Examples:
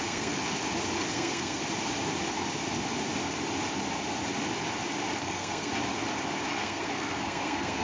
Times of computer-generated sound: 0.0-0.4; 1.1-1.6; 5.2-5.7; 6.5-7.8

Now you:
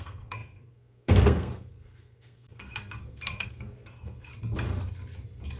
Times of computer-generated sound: 0.0-4.3